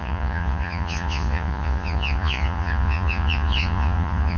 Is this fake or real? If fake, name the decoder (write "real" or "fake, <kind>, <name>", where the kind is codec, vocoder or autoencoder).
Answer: fake, vocoder, Vocos